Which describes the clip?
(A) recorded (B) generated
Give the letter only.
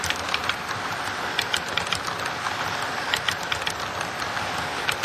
B